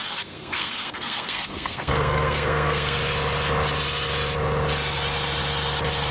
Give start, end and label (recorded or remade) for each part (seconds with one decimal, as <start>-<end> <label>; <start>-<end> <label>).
0.0-3.0 remade; 3.0-6.1 recorded